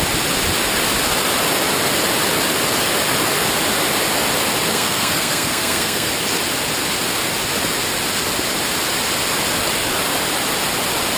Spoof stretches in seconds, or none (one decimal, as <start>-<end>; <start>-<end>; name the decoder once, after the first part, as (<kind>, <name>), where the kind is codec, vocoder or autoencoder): 4.7-6.1 (codec, SNAC)